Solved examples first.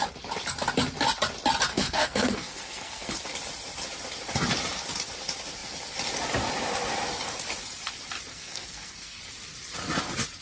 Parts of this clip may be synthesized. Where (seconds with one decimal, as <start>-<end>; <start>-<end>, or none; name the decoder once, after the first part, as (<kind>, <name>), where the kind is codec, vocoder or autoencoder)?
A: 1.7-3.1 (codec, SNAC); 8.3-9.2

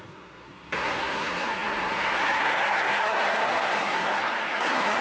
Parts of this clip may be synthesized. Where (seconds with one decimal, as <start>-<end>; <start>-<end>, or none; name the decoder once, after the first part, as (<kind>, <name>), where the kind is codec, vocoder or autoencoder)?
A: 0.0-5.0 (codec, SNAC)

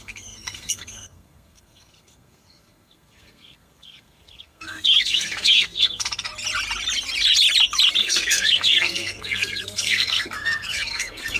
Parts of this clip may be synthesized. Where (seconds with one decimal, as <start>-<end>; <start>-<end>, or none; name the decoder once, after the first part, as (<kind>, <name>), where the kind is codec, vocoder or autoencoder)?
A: 0.0-6.3 (codec, SNAC); 8.0-11.4

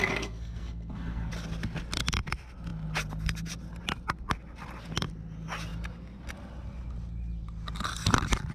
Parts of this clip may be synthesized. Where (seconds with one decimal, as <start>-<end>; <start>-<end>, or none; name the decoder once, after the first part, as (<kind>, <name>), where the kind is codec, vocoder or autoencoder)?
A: 0.0-1.3 (codec, SNAC)

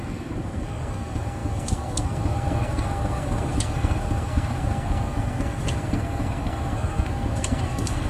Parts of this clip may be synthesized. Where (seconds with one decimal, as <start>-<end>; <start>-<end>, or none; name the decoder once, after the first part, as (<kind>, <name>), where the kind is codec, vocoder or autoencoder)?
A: 0.0-8.1 (codec, SNAC)